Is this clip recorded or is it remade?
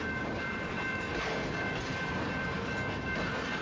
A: recorded